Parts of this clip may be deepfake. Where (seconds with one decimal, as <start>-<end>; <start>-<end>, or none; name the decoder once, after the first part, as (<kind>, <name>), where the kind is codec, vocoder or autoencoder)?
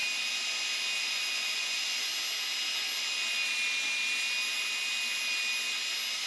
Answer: 1.0-2.1 (vocoder, Vocos)